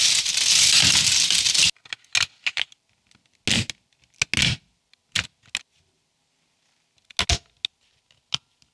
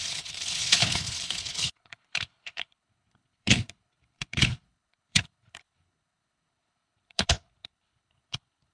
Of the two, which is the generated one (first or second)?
second